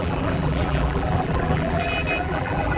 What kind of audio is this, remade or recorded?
remade